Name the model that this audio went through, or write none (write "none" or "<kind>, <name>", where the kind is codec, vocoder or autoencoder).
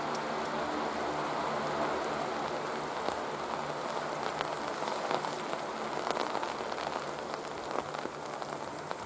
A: none